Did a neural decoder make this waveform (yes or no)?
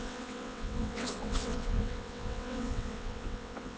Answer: yes